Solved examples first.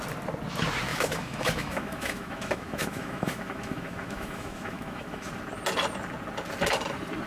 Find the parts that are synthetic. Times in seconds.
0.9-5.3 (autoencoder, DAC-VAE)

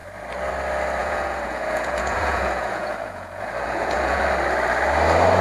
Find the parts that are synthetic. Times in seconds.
1.0-4.2 (vocoder, Vocos)

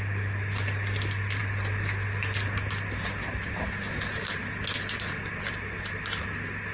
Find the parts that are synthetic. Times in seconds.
none

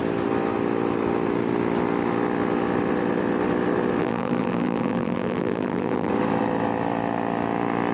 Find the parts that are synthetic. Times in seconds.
4.0-6.1 (vocoder, BigVGAN v2)

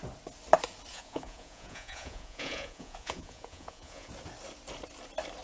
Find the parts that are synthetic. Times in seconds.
0.9-4.1 (vocoder, Vocos)

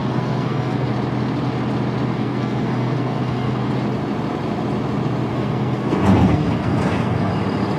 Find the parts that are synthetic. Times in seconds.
0.0-0.9 (codec, SNAC); 2.1-3.7; 5.3-7.3

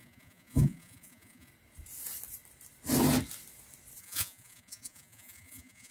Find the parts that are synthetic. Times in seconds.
0.0-1.5 (vocoder, Vocos); 4.0-5.9

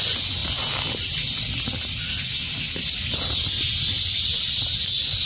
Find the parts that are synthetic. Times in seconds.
none